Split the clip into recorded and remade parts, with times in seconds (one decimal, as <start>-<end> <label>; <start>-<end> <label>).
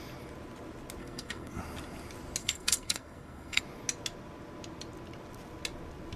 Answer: 0.0-1.0 recorded; 1.0-1.6 remade; 1.6-2.4 recorded; 2.4-3.6 remade; 3.6-6.2 recorded